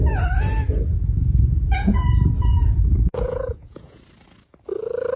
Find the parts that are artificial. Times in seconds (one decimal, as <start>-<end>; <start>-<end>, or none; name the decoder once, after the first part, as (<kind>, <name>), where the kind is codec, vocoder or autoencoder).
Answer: 0.9-4.0 (vocoder, Vocos)